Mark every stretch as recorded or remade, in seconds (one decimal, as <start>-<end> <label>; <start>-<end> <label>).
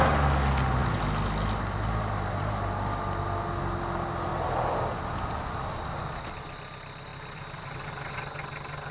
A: 0.0-8.9 recorded